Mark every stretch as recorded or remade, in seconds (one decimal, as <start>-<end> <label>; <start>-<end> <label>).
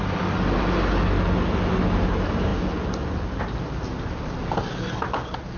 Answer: 0.0-5.6 recorded